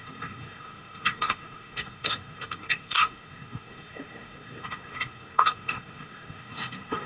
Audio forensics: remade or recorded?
remade